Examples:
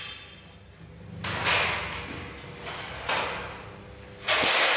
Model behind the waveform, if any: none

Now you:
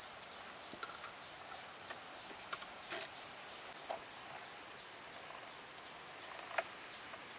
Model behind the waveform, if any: none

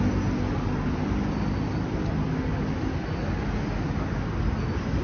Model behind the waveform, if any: none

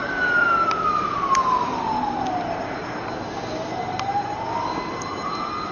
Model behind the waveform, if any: none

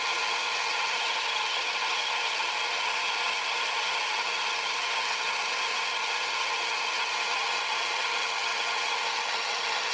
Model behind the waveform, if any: vocoder, HiFi-GAN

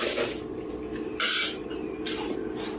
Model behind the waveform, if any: none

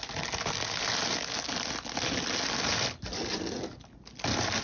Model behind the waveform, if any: none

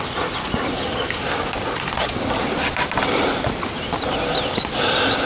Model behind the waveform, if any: none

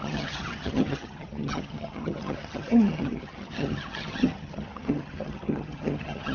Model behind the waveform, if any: vocoder, HiFi-GAN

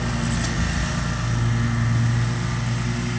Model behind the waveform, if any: none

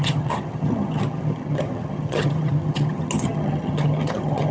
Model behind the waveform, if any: vocoder, HiFi-GAN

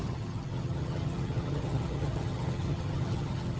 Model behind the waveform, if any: vocoder, HiFi-GAN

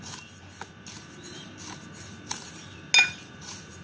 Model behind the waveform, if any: none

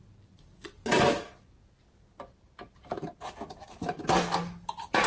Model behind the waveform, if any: none